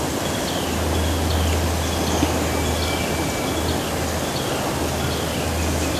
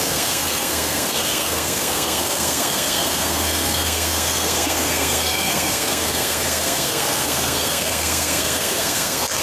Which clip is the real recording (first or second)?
first